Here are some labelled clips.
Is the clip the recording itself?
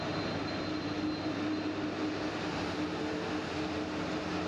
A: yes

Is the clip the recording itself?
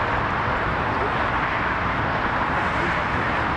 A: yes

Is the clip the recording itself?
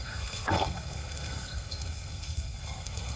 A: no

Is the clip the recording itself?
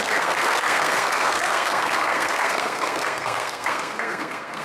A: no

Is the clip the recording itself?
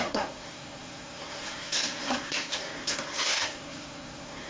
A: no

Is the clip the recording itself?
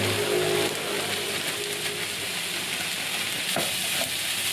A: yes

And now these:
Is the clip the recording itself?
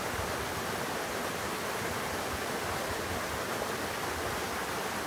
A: yes